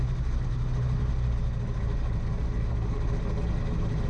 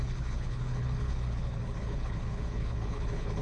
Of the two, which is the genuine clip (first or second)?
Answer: first